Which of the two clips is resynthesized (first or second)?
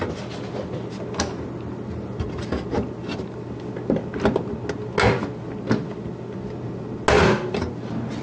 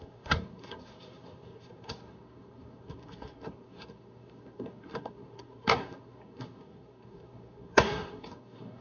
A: second